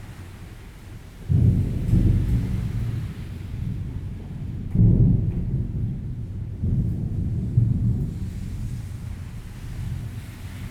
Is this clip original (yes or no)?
yes